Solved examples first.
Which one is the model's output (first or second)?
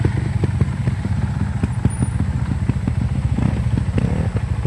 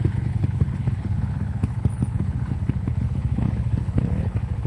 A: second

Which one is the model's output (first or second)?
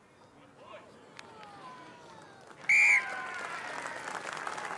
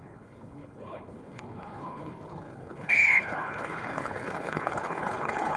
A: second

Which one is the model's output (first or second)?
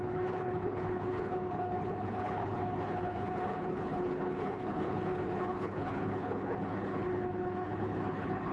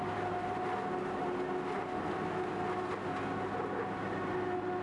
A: first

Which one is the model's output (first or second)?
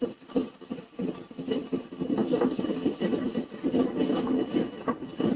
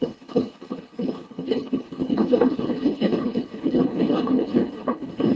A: second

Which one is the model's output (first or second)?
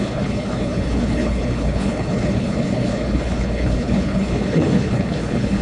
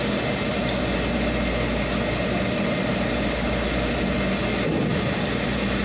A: first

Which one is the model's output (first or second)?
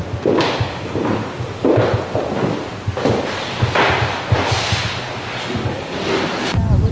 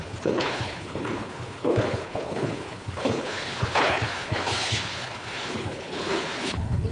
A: second